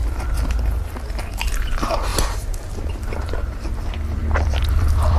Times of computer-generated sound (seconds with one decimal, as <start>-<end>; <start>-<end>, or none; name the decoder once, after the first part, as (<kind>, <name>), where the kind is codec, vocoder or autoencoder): 0.0-5.2 (vocoder, BigVGAN v2)